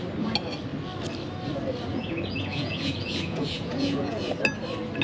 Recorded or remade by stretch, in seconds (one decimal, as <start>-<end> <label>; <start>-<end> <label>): 0.0-1.9 recorded; 1.9-4.3 remade; 4.3-5.0 recorded